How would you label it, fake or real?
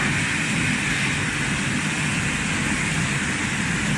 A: real